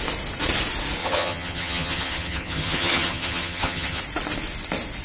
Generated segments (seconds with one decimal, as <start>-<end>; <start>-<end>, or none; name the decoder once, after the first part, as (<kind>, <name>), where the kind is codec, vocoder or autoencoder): 1.0-4.0 (vocoder, HiFi-GAN)